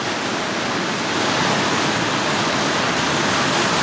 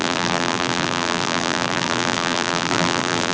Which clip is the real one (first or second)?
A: first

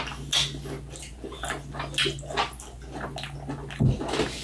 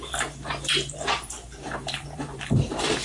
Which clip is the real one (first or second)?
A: first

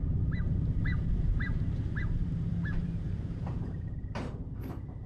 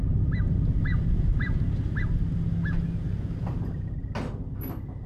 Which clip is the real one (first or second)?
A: second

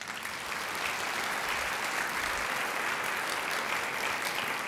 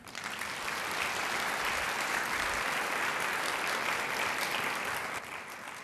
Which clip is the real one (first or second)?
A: first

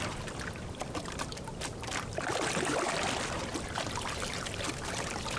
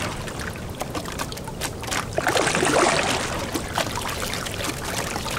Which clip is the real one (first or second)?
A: second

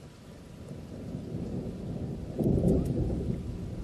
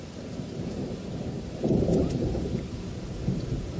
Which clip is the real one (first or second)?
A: first